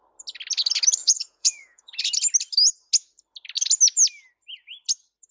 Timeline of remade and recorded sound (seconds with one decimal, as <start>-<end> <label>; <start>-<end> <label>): 0.0-1.0 recorded; 1.0-2.0 remade; 2.0-5.3 recorded